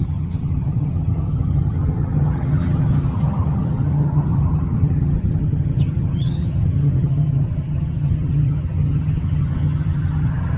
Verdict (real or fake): fake